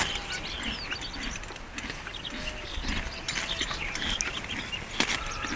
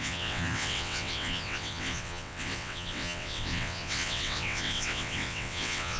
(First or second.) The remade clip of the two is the second